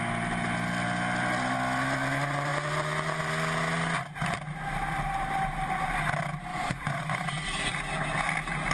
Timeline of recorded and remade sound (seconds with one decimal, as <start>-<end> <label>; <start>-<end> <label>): 0.0-6.5 recorded; 6.5-7.7 remade; 7.7-8.7 recorded